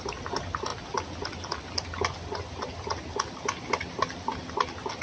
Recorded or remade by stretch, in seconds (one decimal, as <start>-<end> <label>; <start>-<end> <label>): 0.0-5.0 recorded